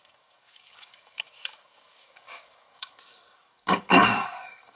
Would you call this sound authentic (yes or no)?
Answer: no